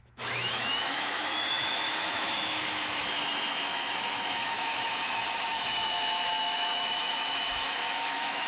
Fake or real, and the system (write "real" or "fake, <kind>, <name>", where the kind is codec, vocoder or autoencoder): fake, autoencoder, DAC-VAE